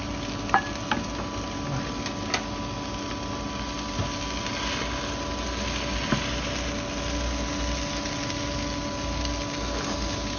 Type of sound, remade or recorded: recorded